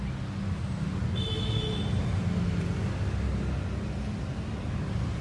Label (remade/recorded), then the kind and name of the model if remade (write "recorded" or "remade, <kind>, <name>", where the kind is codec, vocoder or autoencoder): recorded